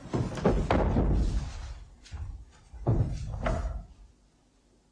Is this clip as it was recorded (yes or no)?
yes